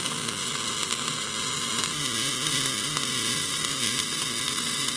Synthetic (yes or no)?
no